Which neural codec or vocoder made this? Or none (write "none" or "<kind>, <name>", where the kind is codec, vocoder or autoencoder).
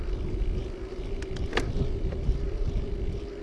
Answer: none